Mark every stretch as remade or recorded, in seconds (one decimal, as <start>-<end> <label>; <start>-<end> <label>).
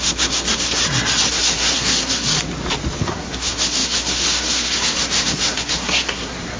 0.0-0.8 remade; 0.8-1.3 recorded; 1.3-2.3 remade; 2.3-3.0 recorded; 3.0-6.6 remade